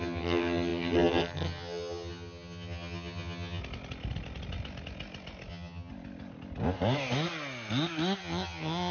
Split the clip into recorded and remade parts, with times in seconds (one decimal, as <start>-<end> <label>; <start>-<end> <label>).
0.0-3.6 remade; 3.6-5.5 recorded; 5.5-5.9 remade; 5.9-8.2 recorded; 8.2-8.9 remade